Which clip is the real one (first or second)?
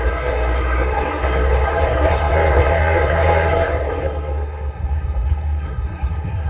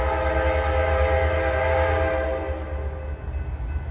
second